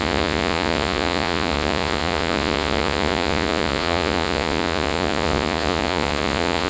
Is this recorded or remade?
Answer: remade